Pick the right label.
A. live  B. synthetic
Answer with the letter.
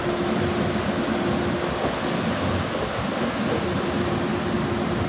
A